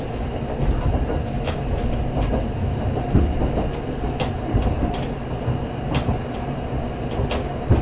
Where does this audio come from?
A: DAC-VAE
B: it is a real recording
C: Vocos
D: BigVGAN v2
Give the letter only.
B